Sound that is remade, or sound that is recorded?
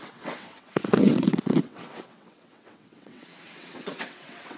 remade